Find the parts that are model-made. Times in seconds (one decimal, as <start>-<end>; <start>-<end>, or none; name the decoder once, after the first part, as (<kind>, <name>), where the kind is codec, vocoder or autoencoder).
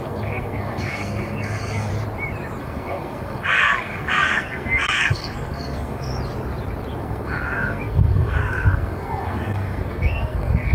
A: 0.0-1.9 (codec, SNAC); 2.6-6.1; 7.0-10.7